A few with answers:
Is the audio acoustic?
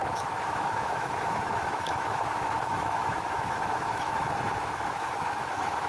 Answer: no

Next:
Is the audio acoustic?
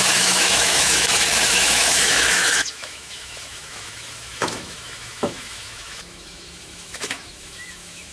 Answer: no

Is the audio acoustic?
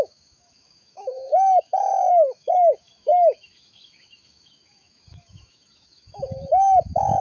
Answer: no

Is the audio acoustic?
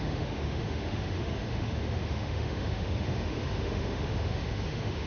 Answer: no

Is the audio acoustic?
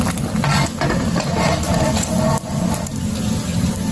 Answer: yes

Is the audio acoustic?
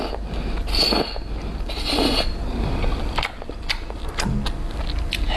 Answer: yes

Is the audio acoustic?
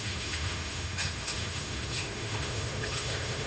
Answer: no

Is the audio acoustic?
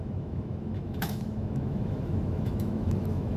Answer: no